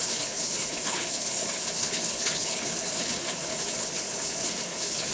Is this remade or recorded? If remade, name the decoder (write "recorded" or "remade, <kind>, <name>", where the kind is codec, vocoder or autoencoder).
remade, codec, HILCodec